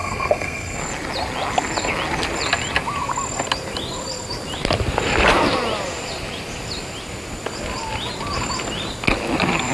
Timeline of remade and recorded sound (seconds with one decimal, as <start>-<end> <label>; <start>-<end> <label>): 0.0-0.8 remade; 0.8-9.7 recorded